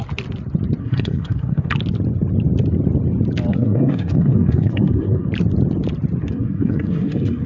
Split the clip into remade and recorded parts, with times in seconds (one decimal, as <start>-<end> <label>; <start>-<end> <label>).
0.0-0.8 recorded; 0.8-1.7 remade; 1.7-3.5 recorded; 3.5-5.3 remade; 5.3-6.2 recorded; 6.2-7.5 remade